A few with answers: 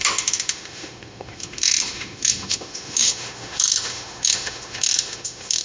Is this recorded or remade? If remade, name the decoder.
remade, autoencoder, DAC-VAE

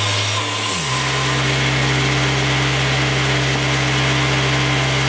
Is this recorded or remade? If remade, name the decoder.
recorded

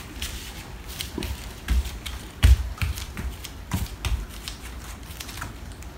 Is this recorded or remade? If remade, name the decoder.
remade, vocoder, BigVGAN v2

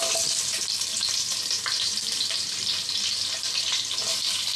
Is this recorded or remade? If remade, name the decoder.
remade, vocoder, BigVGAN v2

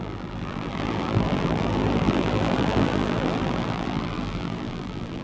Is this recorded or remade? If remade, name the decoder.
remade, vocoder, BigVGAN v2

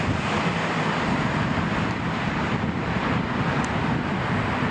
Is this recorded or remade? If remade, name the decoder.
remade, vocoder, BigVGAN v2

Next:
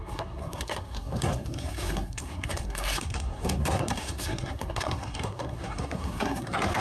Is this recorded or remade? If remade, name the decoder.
remade, codec, SNAC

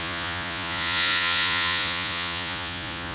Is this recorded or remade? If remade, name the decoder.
remade, vocoder, Vocos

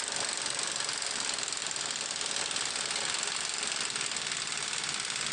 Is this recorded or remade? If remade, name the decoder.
recorded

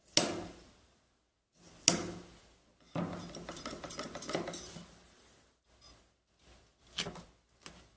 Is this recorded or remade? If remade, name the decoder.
recorded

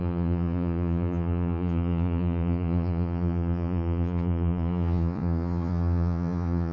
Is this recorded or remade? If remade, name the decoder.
remade, vocoder, Vocos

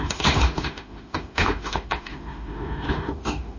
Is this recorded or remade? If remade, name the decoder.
remade, autoencoder, DAC-VAE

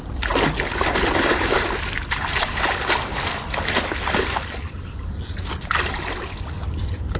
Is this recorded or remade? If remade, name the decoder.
recorded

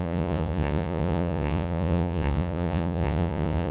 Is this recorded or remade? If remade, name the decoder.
remade, vocoder, Vocos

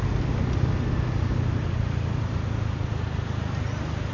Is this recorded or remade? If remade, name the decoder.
recorded